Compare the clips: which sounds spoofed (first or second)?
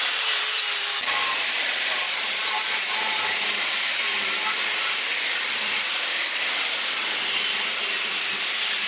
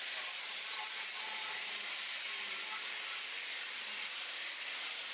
first